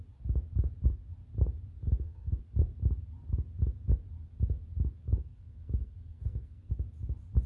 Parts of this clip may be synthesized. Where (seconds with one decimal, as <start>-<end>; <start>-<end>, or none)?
1.8-2.4; 5.1-6.7